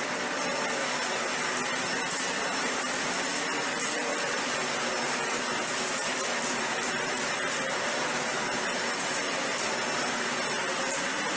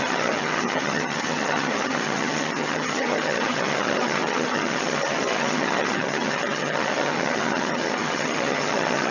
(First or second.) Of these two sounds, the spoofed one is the second